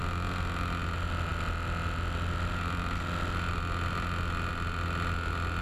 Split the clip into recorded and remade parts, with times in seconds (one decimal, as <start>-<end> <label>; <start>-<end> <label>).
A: 0.0-5.6 recorded